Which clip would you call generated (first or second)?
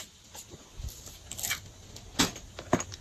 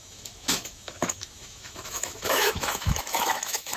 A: second